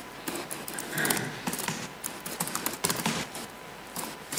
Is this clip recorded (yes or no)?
no